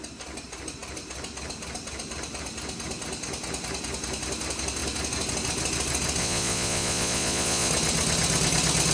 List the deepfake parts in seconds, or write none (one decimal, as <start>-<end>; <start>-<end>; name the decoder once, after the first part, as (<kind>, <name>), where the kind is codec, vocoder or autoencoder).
6.2-7.7 (vocoder, Vocos)